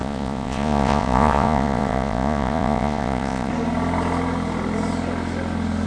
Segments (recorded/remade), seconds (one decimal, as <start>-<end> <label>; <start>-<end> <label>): 0.0-3.5 remade; 3.5-5.9 recorded